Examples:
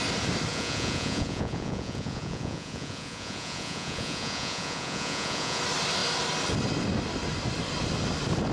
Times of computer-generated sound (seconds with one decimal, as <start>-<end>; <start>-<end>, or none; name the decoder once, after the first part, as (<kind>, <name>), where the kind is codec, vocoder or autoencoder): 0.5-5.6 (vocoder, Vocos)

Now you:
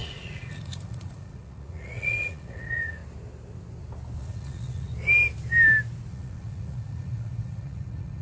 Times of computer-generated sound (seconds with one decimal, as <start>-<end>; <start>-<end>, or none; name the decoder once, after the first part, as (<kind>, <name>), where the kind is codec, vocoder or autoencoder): 0.0-3.0 (vocoder, Vocos); 4.2-4.9; 6.1-8.2

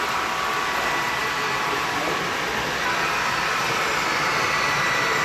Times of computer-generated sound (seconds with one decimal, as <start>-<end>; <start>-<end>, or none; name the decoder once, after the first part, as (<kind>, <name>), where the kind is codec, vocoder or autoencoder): none